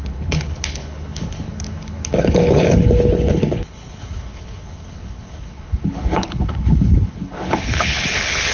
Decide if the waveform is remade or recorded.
remade